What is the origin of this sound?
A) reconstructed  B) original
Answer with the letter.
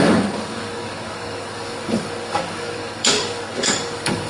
A